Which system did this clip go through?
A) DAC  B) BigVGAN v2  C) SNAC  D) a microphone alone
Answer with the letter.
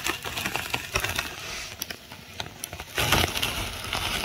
D